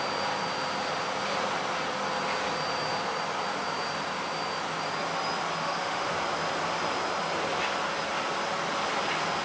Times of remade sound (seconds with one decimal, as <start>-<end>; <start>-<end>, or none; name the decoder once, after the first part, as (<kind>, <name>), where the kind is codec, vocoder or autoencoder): 5.6-6.1 (autoencoder, DAC-VAE)